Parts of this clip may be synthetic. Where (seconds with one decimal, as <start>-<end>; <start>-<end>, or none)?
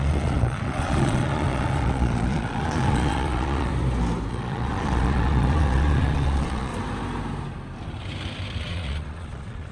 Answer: 0.0-3.7; 4.3-6.7; 8.6-9.7